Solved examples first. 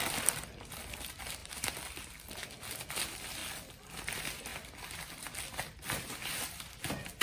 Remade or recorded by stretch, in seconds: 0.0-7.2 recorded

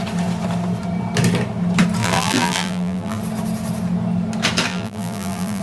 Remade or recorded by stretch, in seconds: 0.0-2.0 recorded; 2.0-3.2 remade; 3.2-4.7 recorded; 4.7-5.6 remade